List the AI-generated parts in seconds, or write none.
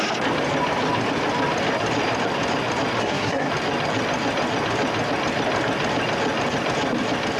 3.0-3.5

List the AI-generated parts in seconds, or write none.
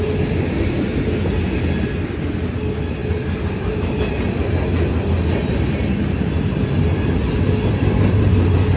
none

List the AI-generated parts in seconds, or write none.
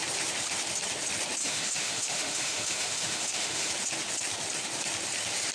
1.4-3.7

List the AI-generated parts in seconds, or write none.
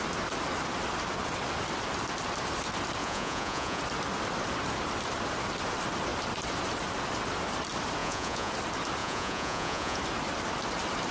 3.0-3.8; 8.0-8.5; 9.0-10.0